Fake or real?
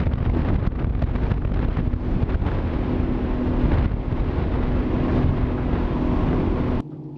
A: real